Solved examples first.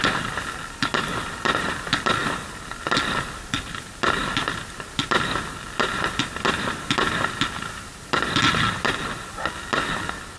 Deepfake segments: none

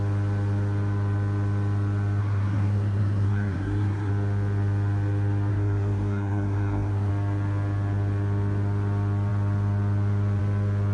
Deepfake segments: 2.2-4.1 (codec, SNAC); 5.5-7.1

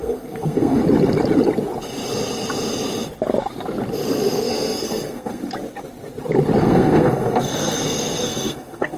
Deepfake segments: 0.0-0.8 (codec, SNAC); 4.4-5.4; 6.6-9.0

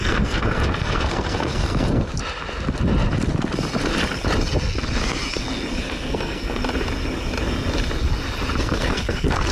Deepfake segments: 0.0-2.1 (codec, SNAC); 5.8-6.6; 8.6-9.5

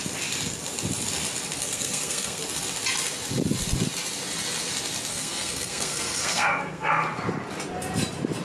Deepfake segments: 1.6-2.4 (codec, SNAC); 5.1-6.9

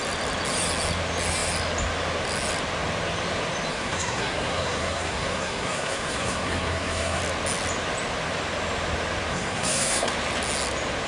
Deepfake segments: 3.7-7.2 (codec, SNAC); 9.3-10.1

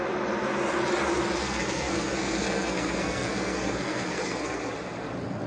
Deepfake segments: 1.4-4.7 (codec, SNAC)

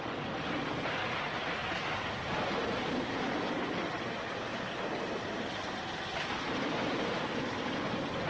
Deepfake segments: none